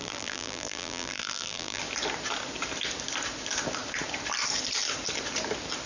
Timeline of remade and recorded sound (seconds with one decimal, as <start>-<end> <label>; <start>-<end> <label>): 0.0-1.8 remade; 1.8-5.9 recorded